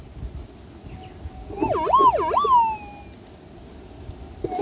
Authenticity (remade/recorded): recorded